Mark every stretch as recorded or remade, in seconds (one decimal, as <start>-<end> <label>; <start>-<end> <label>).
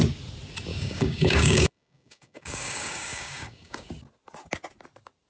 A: 0.0-0.7 recorded; 0.7-3.9 remade; 3.9-5.3 recorded